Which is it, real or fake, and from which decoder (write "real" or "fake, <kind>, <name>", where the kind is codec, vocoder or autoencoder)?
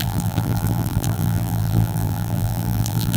fake, vocoder, BigVGAN v2